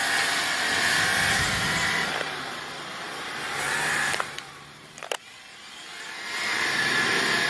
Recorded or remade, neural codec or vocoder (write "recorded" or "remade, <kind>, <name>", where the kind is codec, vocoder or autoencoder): recorded